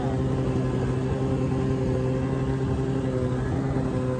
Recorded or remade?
recorded